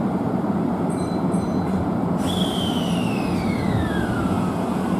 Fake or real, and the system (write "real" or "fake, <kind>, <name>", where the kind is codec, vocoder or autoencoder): fake, vocoder, BigVGAN v2